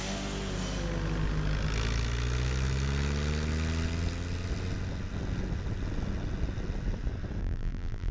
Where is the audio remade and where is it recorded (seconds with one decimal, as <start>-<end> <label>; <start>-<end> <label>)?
0.0-7.4 recorded; 7.4-8.1 remade